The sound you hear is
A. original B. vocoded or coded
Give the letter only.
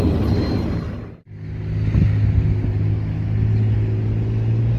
A